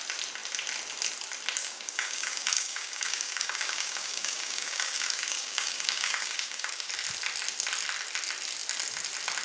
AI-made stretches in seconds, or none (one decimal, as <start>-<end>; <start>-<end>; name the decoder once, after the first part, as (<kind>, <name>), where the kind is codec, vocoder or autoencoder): 1.6-6.9 (codec, DAC)